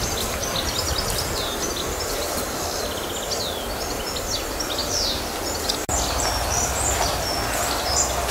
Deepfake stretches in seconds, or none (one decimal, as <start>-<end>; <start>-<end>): none